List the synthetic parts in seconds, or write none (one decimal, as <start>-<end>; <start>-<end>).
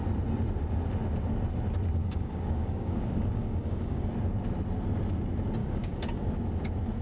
2.0-4.1; 5.6-6.3